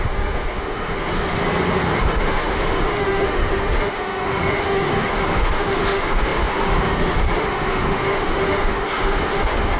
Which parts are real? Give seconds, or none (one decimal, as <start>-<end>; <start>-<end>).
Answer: 1.4-2.0